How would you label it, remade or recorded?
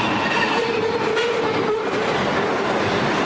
recorded